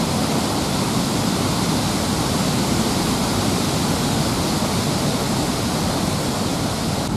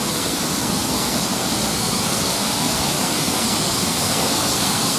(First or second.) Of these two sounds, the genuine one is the first